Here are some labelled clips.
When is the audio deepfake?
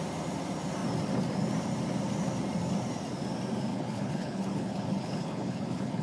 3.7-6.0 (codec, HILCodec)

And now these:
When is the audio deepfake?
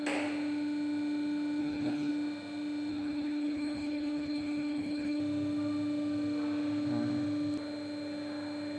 1.6-2.1 (codec, HILCodec); 2.9-5.2